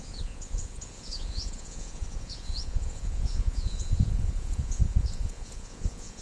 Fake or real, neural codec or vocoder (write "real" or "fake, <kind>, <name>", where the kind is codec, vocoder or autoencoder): fake, vocoder, Vocos